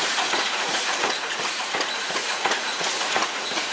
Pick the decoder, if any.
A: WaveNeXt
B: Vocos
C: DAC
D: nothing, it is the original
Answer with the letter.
B